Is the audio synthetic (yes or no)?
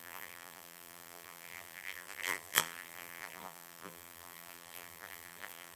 yes